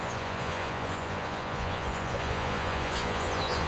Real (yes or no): no